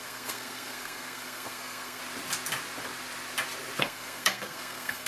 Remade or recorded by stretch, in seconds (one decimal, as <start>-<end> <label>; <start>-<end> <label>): 0.0-2.0 remade; 2.0-3.8 recorded; 3.8-5.1 remade